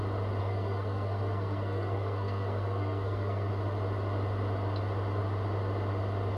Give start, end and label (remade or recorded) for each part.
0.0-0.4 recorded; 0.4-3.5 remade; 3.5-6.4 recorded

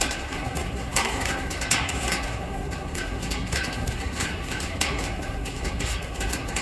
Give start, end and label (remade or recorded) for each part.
0.0-6.6 remade

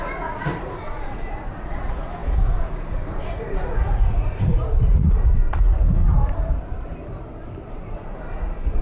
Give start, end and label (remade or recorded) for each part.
0.0-6.0 remade; 6.0-7.7 recorded; 7.7-8.8 remade

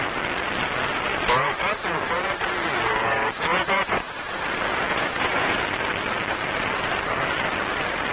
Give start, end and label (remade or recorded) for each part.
0.0-3.5 recorded; 3.5-4.4 remade; 4.4-4.9 recorded; 4.9-5.6 remade; 5.6-8.1 recorded

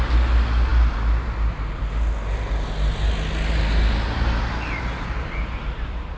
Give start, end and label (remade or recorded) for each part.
0.0-6.2 recorded

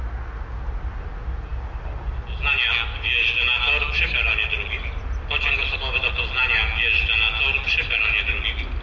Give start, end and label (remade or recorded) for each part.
0.0-8.8 recorded

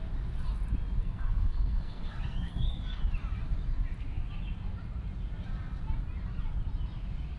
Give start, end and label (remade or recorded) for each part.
0.0-1.0 recorded; 1.0-3.0 remade; 3.0-7.4 recorded